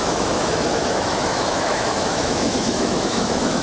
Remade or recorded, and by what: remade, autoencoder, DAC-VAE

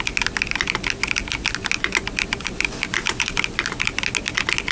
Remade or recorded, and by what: recorded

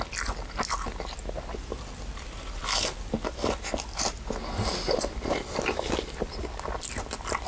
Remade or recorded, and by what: recorded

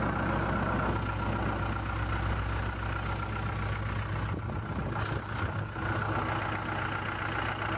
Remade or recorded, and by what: recorded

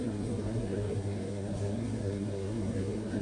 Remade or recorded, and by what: remade, codec, SNAC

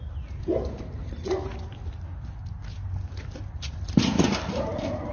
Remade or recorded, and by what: recorded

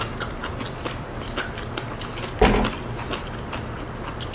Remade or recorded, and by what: recorded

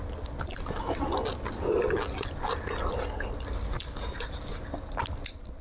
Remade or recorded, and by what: recorded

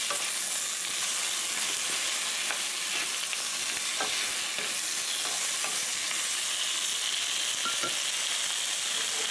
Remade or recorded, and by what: recorded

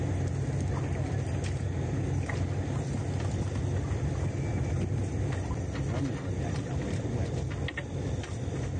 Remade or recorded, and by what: recorded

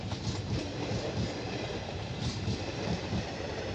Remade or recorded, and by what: recorded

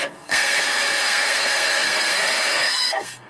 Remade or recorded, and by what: remade, codec, SNAC